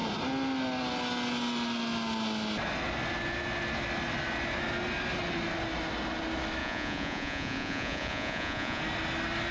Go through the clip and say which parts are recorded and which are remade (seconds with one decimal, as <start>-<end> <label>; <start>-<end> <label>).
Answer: 0.0-6.6 recorded; 6.6-8.8 remade; 8.8-9.5 recorded